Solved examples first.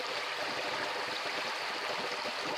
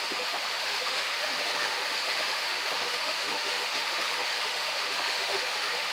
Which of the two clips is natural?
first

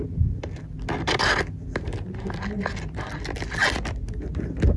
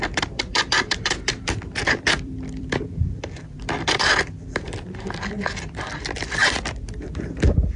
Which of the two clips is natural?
first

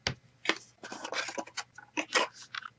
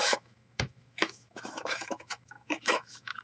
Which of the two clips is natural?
first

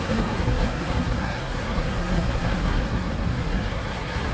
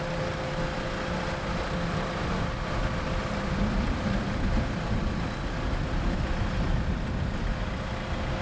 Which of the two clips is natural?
second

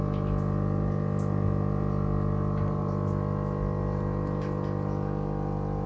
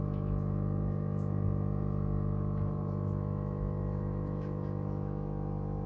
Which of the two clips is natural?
first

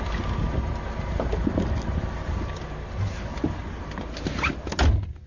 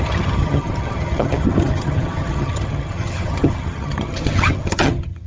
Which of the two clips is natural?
first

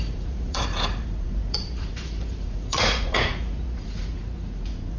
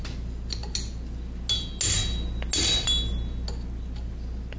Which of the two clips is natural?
second